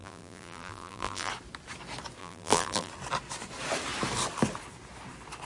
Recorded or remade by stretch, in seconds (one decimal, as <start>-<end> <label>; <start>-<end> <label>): 0.0-1.3 remade; 1.3-2.2 recorded; 2.2-2.9 remade; 2.9-5.4 recorded